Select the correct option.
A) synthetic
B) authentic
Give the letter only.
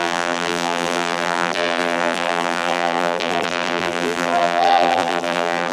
A